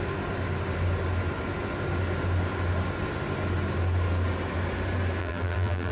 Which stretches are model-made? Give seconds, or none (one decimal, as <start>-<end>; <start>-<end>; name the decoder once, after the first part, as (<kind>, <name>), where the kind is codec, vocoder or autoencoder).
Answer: 5.2-5.9 (vocoder, BigVGAN v2)